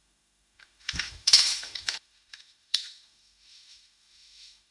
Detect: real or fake fake